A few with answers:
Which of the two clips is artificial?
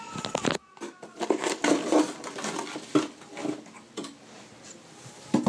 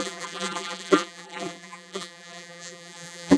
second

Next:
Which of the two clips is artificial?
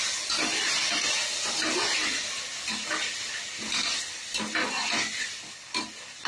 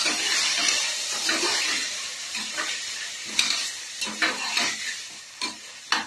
second